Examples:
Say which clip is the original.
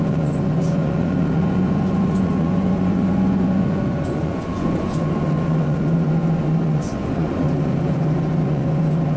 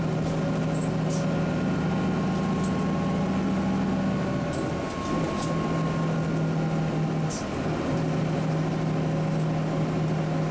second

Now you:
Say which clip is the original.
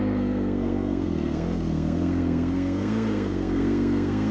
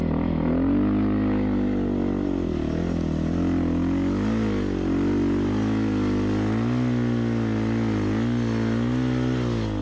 second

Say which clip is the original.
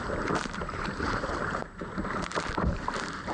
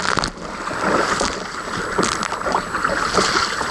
second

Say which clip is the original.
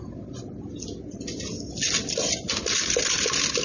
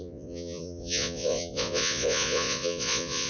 first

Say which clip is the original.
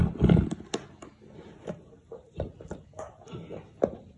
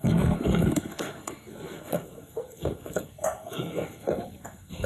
first